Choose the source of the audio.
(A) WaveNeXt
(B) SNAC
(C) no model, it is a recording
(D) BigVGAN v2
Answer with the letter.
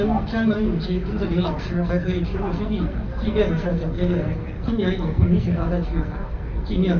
B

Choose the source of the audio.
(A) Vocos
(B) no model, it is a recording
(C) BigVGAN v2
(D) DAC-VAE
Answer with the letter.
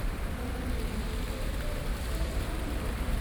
C